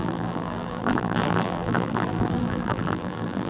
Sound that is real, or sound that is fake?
fake